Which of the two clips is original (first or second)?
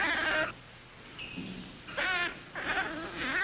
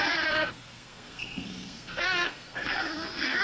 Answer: first